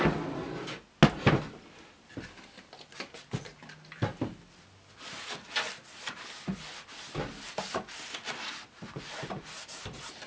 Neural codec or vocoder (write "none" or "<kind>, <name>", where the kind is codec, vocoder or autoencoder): none